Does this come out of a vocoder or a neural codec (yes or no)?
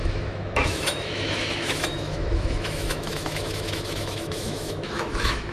yes